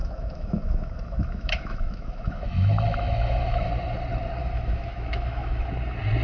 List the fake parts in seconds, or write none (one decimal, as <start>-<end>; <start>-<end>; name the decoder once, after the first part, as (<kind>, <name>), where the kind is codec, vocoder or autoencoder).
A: 0.0-3.7 (autoencoder, DAC-VAE); 4.4-5.7